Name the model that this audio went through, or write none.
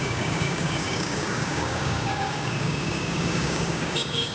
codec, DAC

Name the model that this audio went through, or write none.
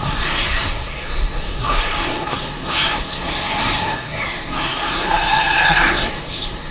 codec, SNAC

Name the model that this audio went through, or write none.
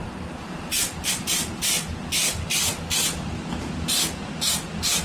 none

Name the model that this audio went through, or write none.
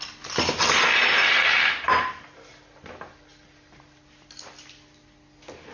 none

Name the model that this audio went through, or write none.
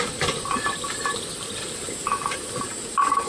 none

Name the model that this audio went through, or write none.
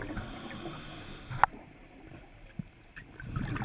none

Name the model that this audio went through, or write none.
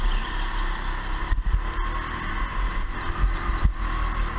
none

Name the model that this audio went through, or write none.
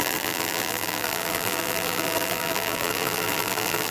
vocoder, BigVGAN v2